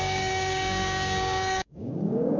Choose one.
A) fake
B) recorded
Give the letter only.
A